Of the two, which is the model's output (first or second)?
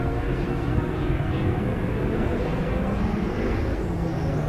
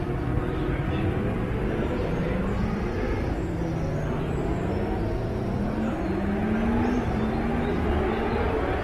first